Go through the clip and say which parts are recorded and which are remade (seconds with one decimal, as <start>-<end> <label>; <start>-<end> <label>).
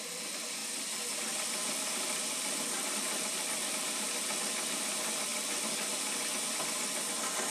0.0-7.5 recorded